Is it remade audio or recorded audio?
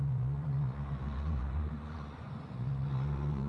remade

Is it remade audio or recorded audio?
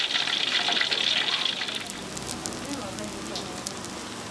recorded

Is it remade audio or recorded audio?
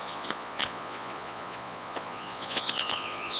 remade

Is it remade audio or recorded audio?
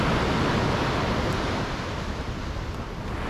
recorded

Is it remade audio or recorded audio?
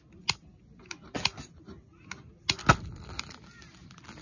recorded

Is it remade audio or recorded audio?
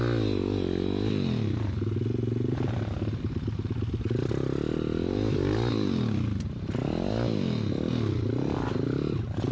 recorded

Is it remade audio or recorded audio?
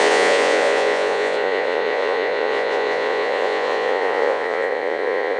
remade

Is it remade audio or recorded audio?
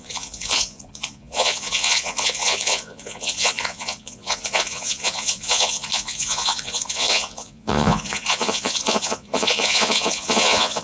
remade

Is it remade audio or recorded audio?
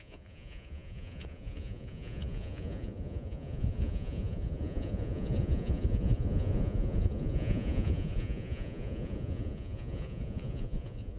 remade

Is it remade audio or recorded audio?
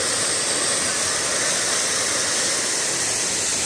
recorded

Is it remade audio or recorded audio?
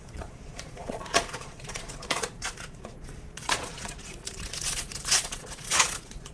remade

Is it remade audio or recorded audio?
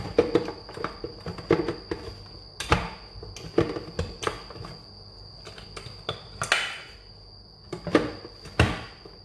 recorded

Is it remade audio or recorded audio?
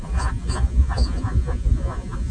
remade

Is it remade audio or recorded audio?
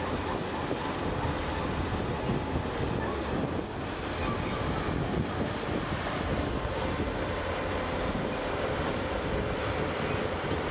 recorded